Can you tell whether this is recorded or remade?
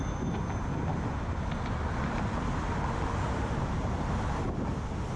recorded